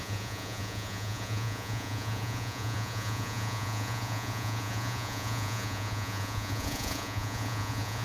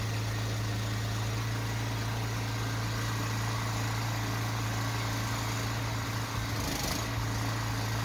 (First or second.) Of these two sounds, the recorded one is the second